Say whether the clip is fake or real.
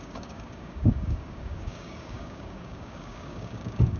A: fake